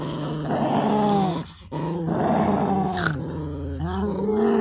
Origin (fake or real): real